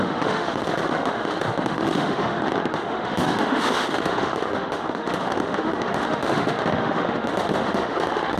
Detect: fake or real fake